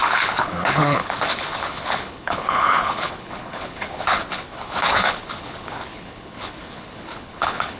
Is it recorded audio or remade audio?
remade